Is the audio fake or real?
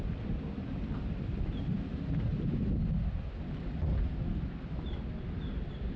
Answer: real